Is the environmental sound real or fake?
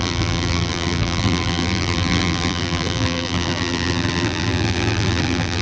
fake